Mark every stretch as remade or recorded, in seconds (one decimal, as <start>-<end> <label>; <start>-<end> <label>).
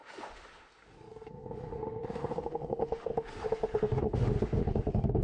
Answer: 0.0-5.2 remade